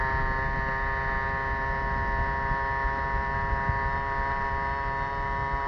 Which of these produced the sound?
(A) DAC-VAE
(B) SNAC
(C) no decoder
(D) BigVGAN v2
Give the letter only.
C